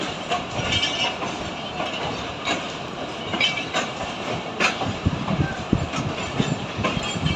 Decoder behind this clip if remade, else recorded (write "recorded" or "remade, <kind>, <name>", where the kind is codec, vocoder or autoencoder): remade, vocoder, BigVGAN v2